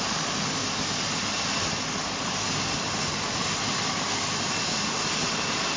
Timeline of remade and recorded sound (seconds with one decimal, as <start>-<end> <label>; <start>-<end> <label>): 0.0-5.8 recorded